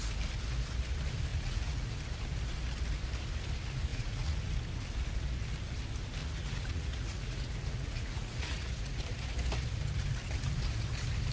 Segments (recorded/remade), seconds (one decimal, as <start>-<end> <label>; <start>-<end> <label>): 0.0-1.3 recorded; 1.3-2.0 remade; 2.0-3.9 recorded; 3.9-4.5 remade; 4.5-6.2 recorded; 6.2-9.0 remade; 9.0-11.3 recorded